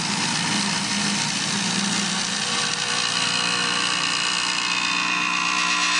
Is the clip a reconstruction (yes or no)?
no